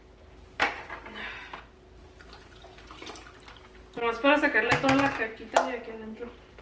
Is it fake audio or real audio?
real